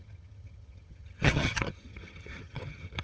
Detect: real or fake fake